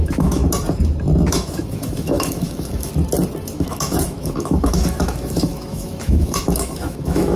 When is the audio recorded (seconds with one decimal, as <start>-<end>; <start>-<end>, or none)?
0.4-1.3; 2.9-3.5